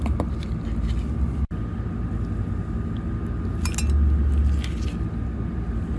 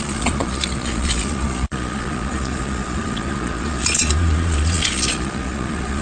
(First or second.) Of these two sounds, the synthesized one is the second